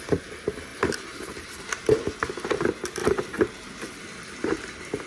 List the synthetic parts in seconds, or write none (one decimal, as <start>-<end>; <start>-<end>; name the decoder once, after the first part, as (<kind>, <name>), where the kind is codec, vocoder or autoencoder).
0.7-1.6 (vocoder, BigVGAN v2); 3.0-4.0